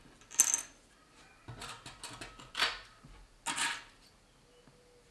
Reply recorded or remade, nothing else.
recorded